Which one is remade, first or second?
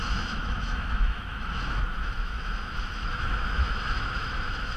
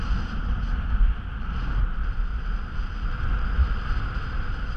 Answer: first